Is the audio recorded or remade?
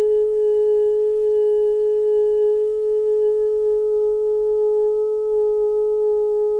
remade